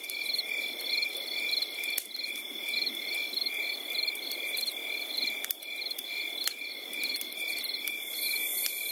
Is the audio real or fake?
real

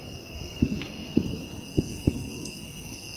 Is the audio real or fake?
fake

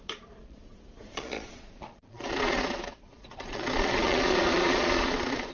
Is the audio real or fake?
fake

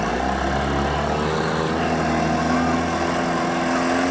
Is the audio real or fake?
real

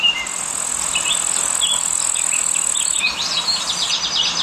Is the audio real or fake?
real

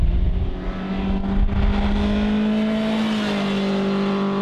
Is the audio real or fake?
real